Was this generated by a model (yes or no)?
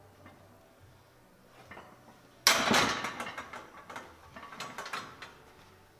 no